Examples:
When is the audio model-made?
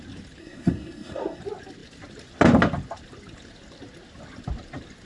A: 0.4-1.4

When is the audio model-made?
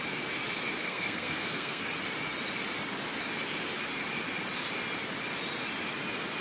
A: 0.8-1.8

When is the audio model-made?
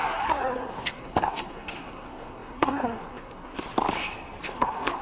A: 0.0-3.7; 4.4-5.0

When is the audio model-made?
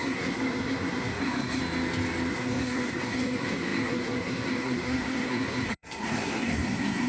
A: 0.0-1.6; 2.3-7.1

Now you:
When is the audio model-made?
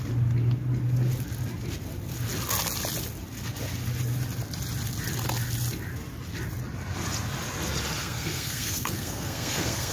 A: 8.0-9.9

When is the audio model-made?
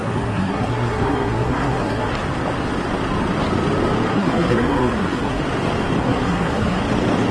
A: 0.0-2.1; 4.1-5.4; 6.0-6.8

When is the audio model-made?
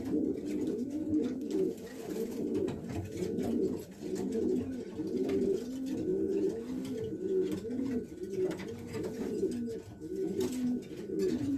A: none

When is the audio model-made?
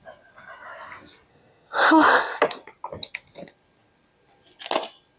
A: 1.3-2.4